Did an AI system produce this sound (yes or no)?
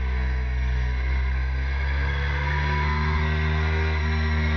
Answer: yes